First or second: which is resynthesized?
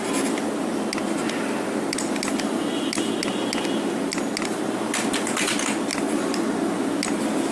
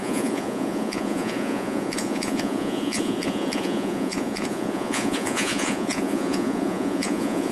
second